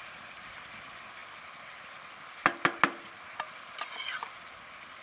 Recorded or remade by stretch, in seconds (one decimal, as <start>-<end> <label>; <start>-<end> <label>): 0.0-5.0 recorded

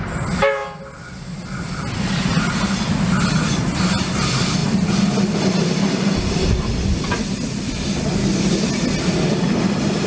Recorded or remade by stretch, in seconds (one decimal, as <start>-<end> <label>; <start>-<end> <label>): 0.0-10.1 recorded

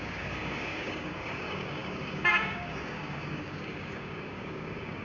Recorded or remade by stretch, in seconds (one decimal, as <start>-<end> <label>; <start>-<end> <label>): 0.0-5.0 remade

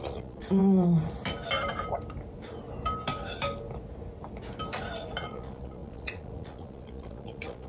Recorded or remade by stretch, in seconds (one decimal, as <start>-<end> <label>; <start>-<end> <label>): 0.0-0.6 remade; 0.6-5.2 recorded; 5.2-7.7 remade

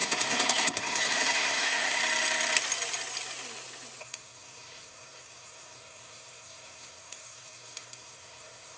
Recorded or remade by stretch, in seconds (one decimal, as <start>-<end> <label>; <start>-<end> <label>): 0.0-2.0 remade; 2.0-4.0 recorded; 4.0-8.8 remade

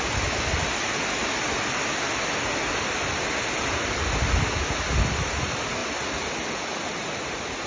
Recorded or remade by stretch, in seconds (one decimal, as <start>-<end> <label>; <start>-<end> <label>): 0.0-7.7 recorded

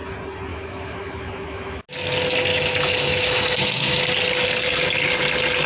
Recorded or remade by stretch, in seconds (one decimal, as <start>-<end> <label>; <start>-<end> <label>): 0.0-0.5 recorded; 0.5-1.8 remade; 1.8-2.5 recorded; 2.5-4.0 remade; 4.0-5.7 recorded

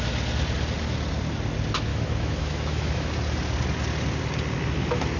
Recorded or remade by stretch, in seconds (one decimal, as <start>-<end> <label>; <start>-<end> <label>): 0.0-1.9 recorded; 1.9-3.1 remade; 3.1-5.2 recorded